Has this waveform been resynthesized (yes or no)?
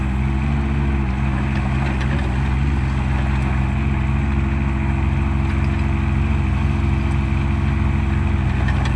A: no